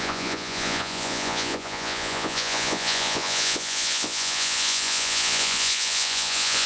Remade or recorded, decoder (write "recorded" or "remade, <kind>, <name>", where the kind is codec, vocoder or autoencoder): remade, vocoder, Vocos